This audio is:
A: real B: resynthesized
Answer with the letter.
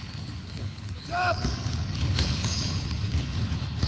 B